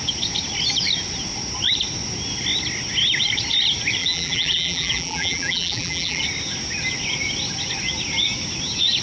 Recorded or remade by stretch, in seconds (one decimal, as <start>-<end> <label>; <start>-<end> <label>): 0.0-4.0 recorded; 4.0-6.2 remade; 6.2-9.0 recorded